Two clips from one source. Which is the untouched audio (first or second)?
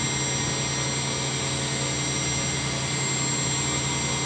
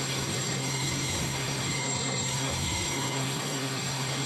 first